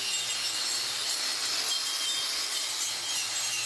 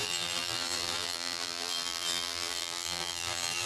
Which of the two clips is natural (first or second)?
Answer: first